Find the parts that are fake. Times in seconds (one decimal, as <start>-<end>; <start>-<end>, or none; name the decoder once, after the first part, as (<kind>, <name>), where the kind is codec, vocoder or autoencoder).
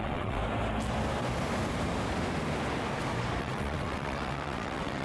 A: 0.0-0.4 (vocoder, WaveNeXt); 3.4-5.0